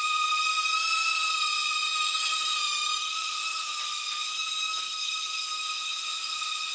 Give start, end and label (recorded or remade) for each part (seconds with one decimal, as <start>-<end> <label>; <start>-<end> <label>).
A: 0.0-0.5 recorded; 0.5-1.3 remade; 1.3-1.9 recorded; 1.9-3.8 remade; 3.8-4.3 recorded; 4.3-5.6 remade; 5.6-6.7 recorded